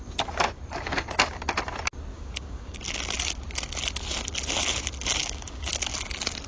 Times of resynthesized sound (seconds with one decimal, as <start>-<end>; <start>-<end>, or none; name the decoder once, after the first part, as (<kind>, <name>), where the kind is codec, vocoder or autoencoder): 2.1-2.8 (codec, DAC); 5.2-5.7